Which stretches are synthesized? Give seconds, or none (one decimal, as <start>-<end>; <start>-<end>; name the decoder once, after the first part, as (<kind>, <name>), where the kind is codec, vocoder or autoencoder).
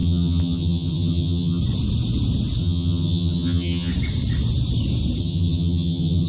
0.0-1.6 (vocoder, HiFi-GAN); 2.6-3.9; 5.2-6.3